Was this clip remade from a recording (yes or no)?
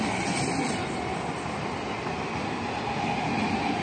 no